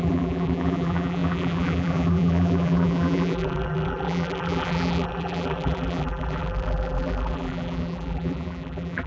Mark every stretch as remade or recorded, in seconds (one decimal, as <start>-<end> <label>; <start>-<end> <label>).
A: 0.0-9.1 remade